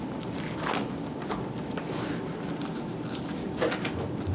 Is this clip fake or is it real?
real